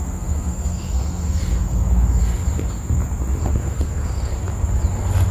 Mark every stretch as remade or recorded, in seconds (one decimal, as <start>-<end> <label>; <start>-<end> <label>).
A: 0.0-2.2 remade; 2.2-3.4 recorded; 3.4-4.3 remade; 4.3-5.3 recorded